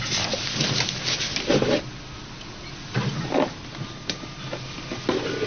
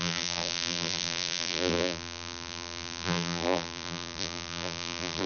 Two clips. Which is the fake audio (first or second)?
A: second